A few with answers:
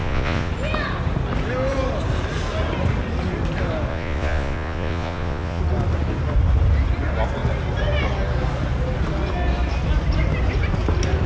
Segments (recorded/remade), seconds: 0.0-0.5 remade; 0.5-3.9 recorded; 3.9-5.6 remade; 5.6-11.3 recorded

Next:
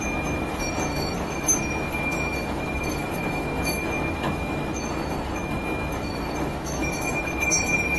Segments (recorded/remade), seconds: 0.0-8.0 remade

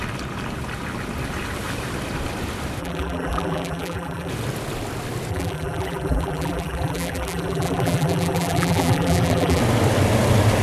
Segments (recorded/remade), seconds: 0.0-2.8 recorded; 2.8-4.3 remade; 4.3-5.3 recorded; 5.3-9.6 remade; 9.6-10.6 recorded

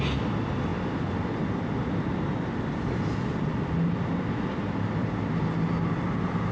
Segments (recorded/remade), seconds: 0.0-6.5 recorded